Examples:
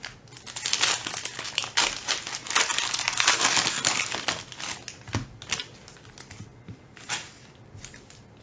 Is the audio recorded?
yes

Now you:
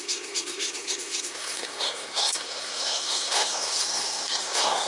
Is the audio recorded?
no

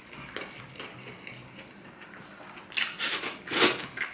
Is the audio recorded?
yes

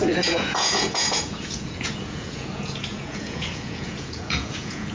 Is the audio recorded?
no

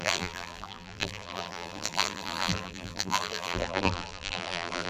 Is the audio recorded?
no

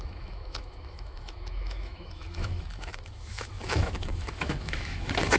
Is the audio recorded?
no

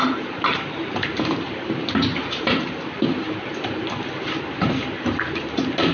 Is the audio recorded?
no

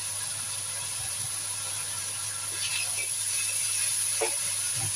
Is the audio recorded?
yes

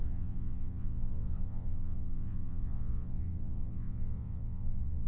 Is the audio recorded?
no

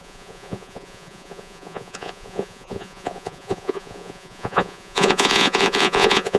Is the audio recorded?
no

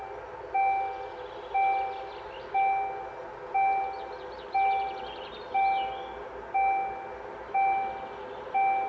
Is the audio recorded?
yes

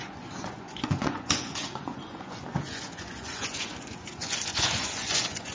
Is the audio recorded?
no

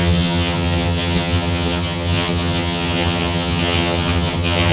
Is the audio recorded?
no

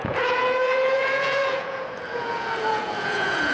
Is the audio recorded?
no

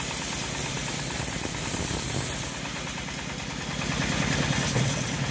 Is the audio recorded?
yes